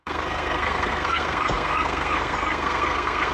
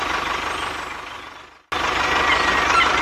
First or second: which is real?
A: second